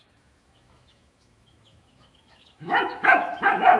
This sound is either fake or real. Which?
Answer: fake